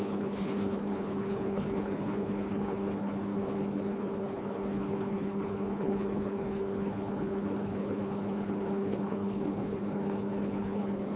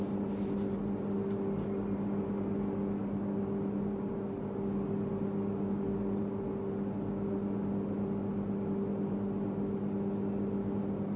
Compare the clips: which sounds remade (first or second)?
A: first